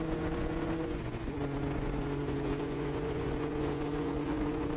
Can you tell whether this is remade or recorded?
remade